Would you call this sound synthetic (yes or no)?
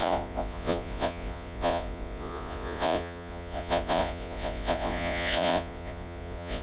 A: yes